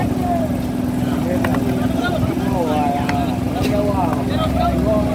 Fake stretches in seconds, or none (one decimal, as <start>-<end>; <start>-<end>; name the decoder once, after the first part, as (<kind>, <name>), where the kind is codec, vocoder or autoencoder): none